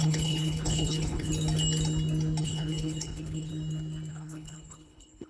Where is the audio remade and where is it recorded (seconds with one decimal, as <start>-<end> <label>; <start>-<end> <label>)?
0.0-1.3 remade; 1.3-2.4 recorded; 2.4-3.5 remade; 3.5-4.1 recorded; 4.1-5.3 remade